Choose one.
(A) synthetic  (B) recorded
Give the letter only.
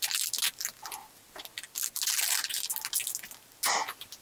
B